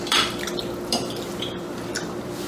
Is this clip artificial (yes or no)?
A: yes